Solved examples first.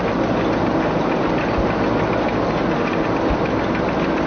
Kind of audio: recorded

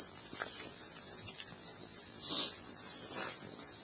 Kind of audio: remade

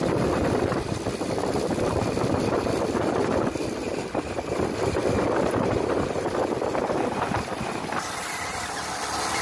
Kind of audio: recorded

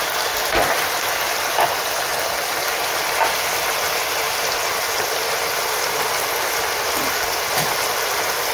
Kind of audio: recorded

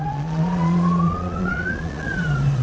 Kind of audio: remade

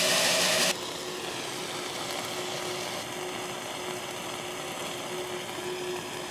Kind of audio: recorded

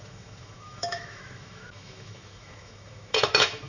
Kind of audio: remade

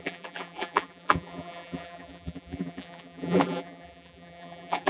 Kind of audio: remade